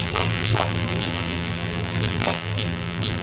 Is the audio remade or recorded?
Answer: remade